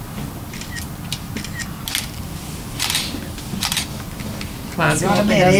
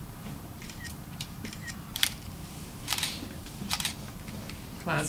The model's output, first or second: second